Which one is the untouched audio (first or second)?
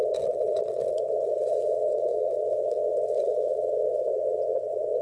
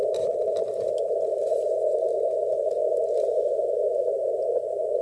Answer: second